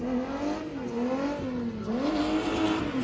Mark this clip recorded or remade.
recorded